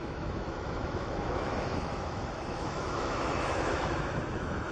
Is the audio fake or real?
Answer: fake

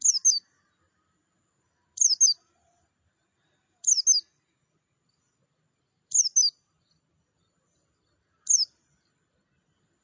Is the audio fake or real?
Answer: real